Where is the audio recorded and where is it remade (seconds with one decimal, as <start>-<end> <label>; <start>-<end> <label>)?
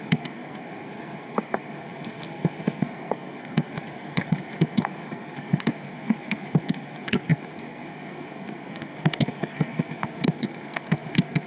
0.0-11.5 remade